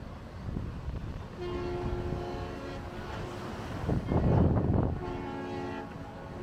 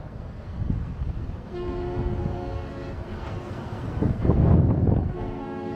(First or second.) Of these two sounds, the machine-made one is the second